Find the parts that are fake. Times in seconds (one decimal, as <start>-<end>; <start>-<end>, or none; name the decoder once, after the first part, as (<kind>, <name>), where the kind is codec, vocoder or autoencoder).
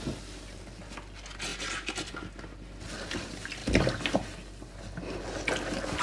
none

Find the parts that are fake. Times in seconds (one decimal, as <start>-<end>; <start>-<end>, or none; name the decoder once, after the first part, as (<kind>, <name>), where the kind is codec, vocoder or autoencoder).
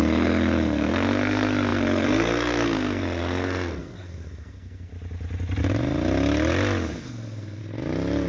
0.0-4.9 (codec, SNAC); 7.0-7.6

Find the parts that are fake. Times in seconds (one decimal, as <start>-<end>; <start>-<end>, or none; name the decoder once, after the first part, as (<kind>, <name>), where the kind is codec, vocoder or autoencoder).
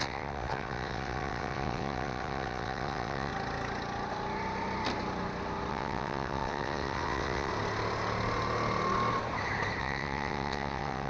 0.0-3.3 (vocoder, WaveNeXt); 5.7-7.5; 9.8-11.1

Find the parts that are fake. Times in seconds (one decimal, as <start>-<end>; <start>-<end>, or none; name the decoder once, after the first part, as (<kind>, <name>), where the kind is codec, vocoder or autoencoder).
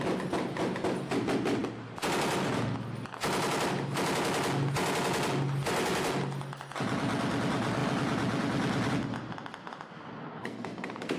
10.3-11.2 (codec, SNAC)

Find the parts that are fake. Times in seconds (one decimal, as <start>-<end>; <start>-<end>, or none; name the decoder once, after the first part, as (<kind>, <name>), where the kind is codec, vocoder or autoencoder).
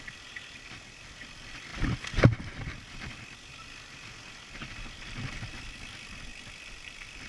none